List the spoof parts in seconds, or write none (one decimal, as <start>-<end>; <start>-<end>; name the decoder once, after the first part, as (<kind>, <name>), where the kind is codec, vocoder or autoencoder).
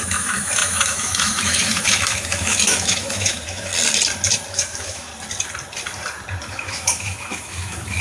0.0-3.7 (autoencoder, DAC-VAE); 4.5-5.1; 6.5-8.0